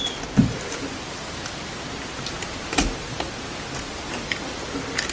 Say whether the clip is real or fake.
real